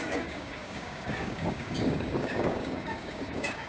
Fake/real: fake